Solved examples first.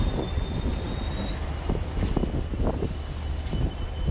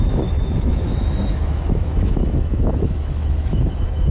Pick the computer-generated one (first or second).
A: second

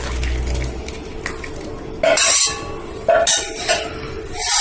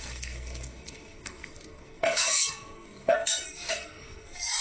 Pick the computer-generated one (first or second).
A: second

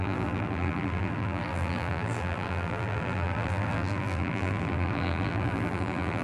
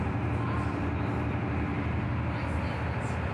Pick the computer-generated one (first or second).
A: first